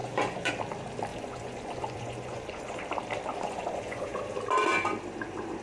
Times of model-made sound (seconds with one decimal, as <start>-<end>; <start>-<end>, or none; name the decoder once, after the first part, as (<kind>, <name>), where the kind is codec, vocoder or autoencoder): 0.0-0.5 (vocoder, Vocos); 1.1-2.8; 3.3-4.2